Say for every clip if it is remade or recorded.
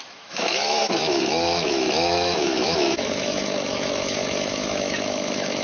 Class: remade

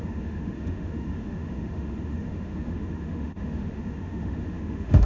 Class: remade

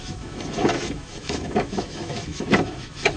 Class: remade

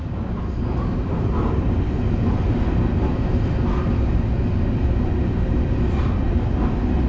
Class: recorded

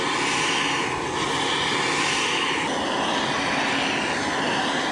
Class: recorded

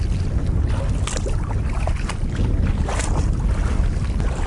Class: recorded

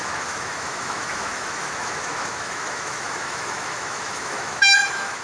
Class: remade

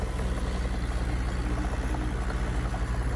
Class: recorded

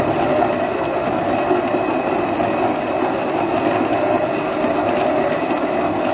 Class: recorded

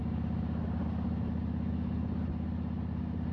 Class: recorded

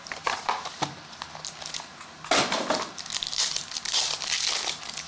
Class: recorded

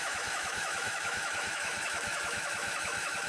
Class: remade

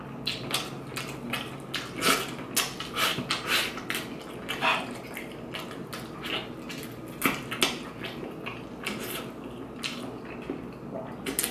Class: recorded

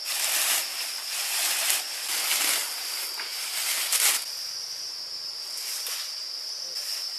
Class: recorded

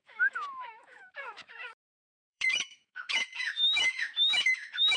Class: remade